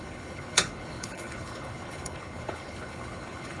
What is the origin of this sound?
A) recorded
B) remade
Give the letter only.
B